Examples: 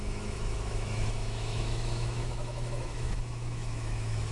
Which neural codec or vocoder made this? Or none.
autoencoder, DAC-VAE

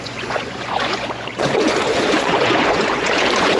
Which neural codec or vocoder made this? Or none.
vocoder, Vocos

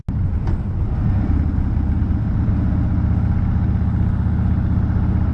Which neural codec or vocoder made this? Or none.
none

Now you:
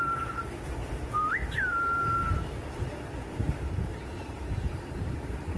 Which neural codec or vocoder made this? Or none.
vocoder, BigVGAN v2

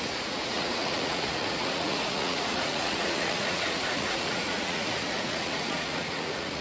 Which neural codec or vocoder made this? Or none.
vocoder, Vocos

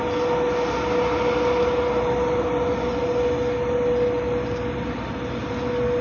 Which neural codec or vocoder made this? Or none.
none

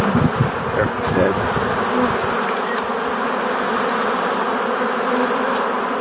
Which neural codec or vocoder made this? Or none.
none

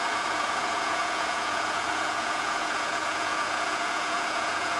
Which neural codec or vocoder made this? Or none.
vocoder, Vocos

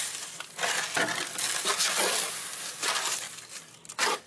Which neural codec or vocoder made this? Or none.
none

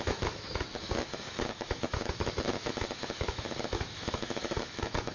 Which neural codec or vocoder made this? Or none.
autoencoder, DAC-VAE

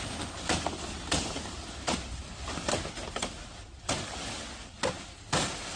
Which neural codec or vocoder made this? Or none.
none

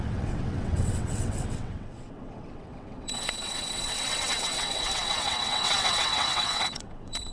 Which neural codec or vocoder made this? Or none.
vocoder, WaveNeXt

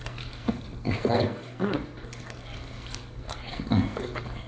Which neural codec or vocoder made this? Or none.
codec, SNAC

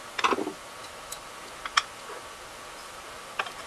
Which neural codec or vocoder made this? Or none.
none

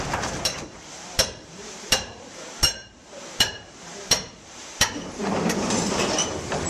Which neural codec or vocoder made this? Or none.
vocoder, BigVGAN v2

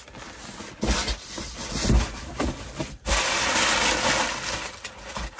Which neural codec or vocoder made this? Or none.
none